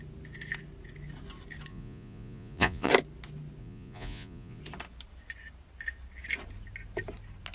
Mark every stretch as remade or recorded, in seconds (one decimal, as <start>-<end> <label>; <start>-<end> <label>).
0.0-1.7 recorded; 1.7-2.9 remade; 2.9-3.6 recorded; 3.6-4.6 remade; 4.6-7.5 recorded